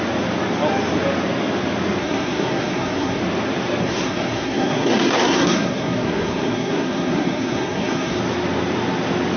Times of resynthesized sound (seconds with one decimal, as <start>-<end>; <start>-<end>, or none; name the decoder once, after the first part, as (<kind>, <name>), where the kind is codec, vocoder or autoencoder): 2.0-3.2 (codec, SNAC); 3.8-8.2